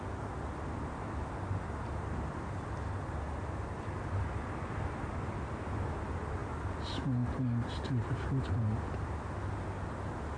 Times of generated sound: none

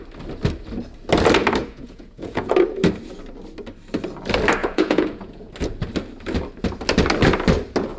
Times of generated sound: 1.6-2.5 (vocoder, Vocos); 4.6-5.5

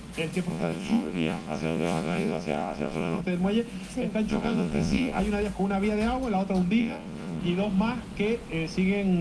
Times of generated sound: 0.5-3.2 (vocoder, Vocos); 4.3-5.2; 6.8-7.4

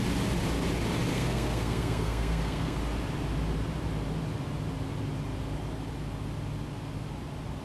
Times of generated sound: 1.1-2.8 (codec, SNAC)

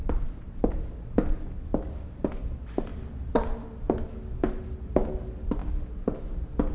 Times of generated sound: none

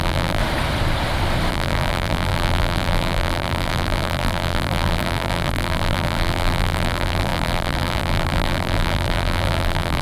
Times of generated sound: 0.0-0.4 (vocoder, BigVGAN v2); 1.5-10.0